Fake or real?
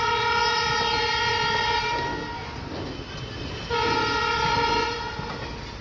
real